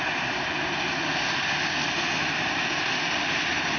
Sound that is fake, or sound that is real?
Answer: real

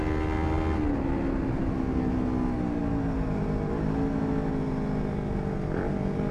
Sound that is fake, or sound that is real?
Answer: real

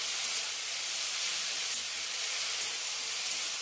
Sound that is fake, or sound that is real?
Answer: real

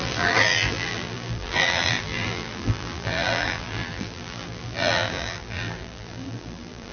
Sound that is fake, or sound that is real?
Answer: fake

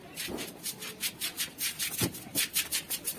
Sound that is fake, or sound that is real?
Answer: real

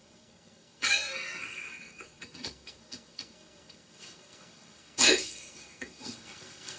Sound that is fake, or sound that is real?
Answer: fake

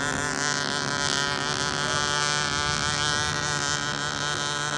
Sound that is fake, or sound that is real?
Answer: real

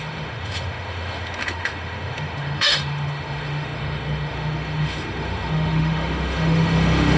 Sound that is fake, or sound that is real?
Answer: fake